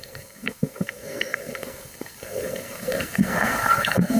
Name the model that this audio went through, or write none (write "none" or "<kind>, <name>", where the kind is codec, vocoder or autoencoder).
codec, SNAC